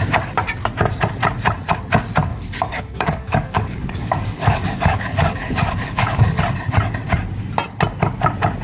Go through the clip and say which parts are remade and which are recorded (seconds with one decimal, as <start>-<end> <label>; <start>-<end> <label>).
0.0-2.3 recorded; 2.3-6.4 remade; 6.4-8.6 recorded